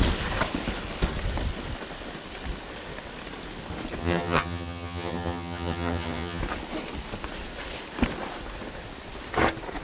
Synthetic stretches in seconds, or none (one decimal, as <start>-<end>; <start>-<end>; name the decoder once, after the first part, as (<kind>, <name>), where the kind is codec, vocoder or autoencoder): 4.0-6.4 (vocoder, HiFi-GAN)